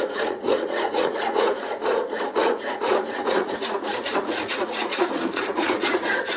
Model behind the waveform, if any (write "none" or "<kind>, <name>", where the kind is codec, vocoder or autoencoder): vocoder, Vocos